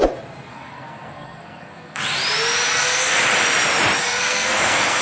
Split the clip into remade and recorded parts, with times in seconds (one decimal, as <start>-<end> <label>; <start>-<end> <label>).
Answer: 0.0-0.5 recorded; 0.5-2.0 remade; 2.0-2.7 recorded; 2.7-3.2 remade; 3.2-4.0 recorded; 4.0-5.0 remade